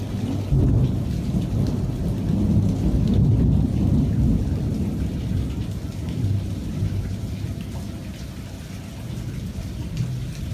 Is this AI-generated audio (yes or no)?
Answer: no